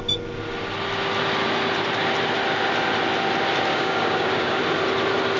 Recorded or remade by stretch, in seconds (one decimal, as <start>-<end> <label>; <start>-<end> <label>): 0.0-3.7 recorded; 3.7-4.6 remade; 4.6-5.4 recorded